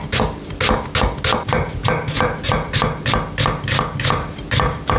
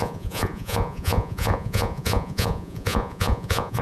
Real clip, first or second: first